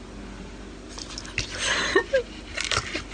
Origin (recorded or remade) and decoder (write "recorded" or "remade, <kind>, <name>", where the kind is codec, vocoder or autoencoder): recorded